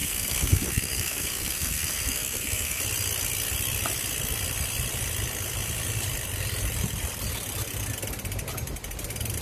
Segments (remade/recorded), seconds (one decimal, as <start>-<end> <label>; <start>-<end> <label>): 0.0-2.8 remade; 2.8-9.4 recorded

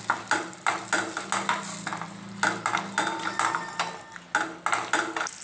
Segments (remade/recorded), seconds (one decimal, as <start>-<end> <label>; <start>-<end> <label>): 0.0-5.4 recorded

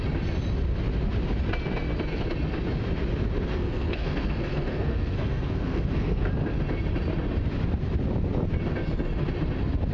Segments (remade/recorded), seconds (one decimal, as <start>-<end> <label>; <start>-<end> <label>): 0.0-3.5 recorded; 3.5-6.3 remade; 6.3-9.9 recorded

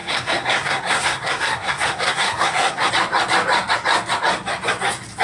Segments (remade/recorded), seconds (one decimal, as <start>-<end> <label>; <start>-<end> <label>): 0.0-2.9 remade; 2.9-5.2 recorded

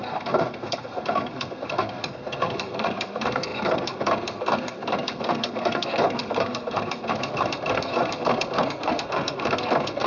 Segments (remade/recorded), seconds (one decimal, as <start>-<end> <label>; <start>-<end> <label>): 0.0-10.1 remade

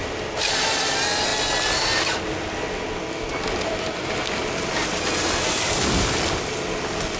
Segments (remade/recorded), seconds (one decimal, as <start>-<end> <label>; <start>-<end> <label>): 0.0-7.2 recorded